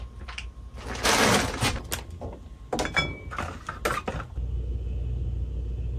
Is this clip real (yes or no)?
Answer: yes